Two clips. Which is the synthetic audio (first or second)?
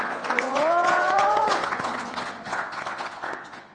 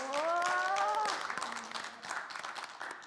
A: first